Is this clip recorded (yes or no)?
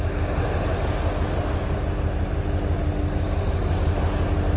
yes